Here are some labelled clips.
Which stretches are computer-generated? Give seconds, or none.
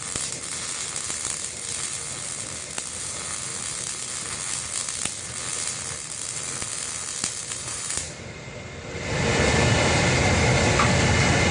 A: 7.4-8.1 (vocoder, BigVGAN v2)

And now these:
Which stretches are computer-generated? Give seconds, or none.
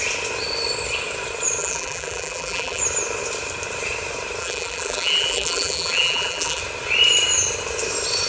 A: 1.6-2.8 (vocoder, BigVGAN v2); 4.4-6.6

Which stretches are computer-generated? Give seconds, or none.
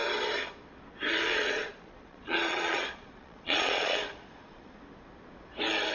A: 1.3-4.8 (vocoder, Vocos)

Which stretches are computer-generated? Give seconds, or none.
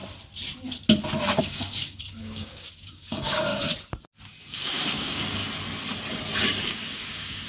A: 1.4-3.5 (codec, DAC); 4.4-5.4; 6.6-7.5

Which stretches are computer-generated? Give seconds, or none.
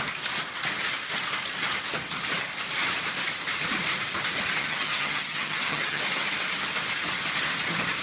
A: 4.6-6.0 (vocoder, HiFi-GAN)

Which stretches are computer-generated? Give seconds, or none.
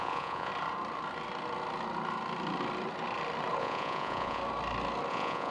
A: 0.0-0.5 (vocoder, Vocos); 3.6-4.4; 5.1-5.5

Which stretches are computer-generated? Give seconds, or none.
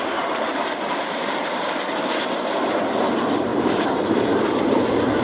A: 0.0-0.5 (vocoder, BigVGAN v2); 1.0-5.2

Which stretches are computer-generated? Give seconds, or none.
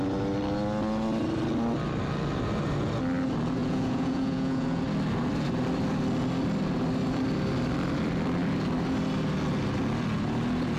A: 3.6-4.8 (vocoder, Vocos)